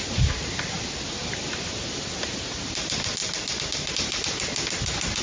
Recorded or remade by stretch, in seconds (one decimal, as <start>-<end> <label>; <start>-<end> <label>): 0.0-5.2 recorded